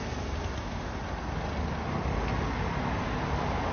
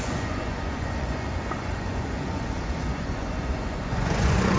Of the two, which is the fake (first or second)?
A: second